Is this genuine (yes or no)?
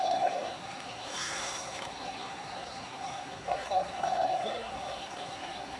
no